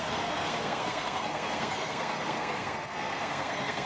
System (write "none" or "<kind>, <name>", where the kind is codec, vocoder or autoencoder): codec, SNAC